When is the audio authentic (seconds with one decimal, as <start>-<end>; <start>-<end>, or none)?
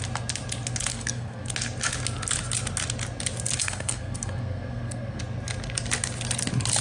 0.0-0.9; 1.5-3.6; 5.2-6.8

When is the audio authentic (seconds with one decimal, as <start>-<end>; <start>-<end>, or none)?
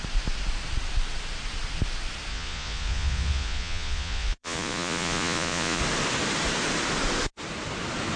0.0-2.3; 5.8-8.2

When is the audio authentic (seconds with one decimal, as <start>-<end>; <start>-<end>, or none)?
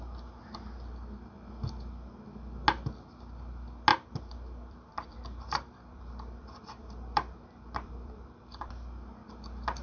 0.0-3.9; 8.7-9.8